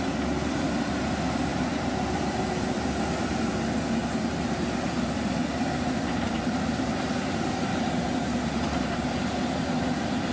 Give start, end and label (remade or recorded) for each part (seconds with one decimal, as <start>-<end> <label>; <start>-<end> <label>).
0.0-1.5 recorded; 1.5-3.6 remade; 3.6-4.0 recorded; 4.0-9.2 remade; 9.2-10.3 recorded